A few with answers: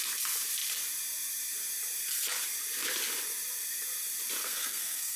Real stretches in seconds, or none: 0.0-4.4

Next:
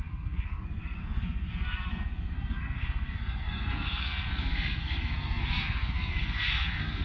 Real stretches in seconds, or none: none

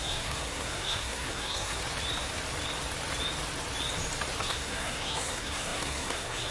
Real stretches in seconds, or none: 1.8-4.4